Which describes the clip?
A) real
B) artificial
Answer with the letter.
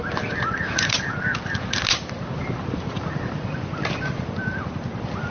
A